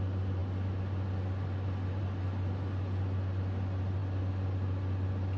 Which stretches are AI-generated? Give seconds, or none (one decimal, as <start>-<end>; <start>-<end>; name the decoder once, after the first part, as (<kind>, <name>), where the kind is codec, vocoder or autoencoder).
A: none